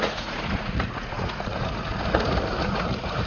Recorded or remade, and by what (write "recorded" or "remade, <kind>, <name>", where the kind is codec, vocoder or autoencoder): remade, vocoder, Vocos